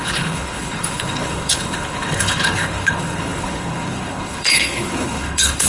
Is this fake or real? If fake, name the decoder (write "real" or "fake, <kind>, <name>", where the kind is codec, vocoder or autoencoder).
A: fake, codec, HILCodec